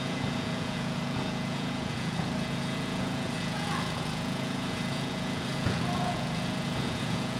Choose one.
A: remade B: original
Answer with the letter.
A